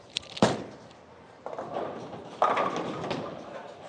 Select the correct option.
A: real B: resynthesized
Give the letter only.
A